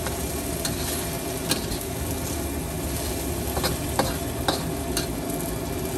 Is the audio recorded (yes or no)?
yes